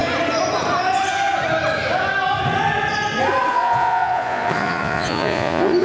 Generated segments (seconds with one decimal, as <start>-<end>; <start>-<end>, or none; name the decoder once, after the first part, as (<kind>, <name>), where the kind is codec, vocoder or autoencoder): 3.5-5.8 (vocoder, Vocos)